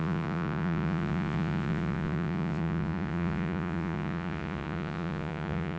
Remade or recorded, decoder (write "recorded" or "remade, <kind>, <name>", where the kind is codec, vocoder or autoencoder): remade, vocoder, Vocos